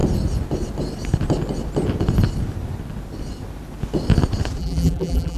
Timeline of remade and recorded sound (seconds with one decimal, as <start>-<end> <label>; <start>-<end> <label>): 0.0-4.6 recorded; 4.6-5.4 remade